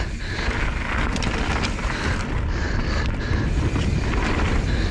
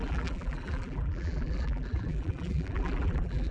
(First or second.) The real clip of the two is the first